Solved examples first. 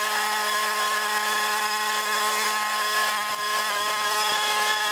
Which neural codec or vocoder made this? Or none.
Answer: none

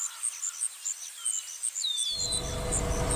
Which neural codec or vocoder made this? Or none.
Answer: none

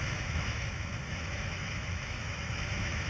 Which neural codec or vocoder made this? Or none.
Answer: autoencoder, DAC-VAE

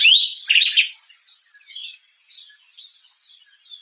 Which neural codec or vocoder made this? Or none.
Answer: none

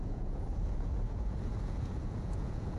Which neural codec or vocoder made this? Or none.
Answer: vocoder, Vocos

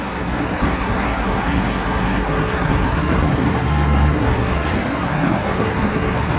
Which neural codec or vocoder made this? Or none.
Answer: codec, SNAC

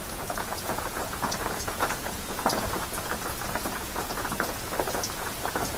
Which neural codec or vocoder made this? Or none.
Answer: vocoder, Vocos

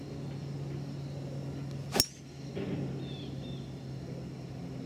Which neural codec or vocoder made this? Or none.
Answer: none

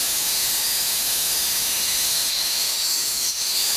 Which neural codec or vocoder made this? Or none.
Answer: autoencoder, DAC-VAE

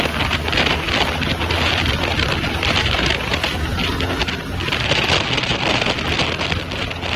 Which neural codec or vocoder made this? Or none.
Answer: none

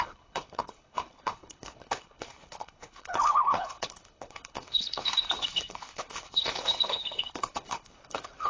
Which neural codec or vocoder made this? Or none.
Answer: codec, HILCodec